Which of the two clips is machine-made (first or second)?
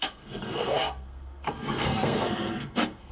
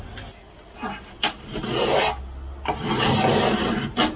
first